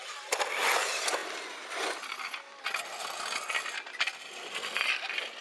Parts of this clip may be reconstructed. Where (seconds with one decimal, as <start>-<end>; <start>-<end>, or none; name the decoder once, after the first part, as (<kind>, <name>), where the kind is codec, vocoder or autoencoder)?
none